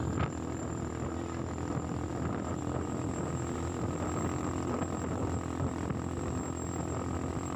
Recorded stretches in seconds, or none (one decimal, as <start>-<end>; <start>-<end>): 0.0-7.6